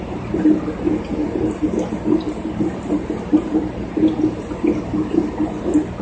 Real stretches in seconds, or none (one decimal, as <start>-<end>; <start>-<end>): 0.0-1.2; 4.8-6.0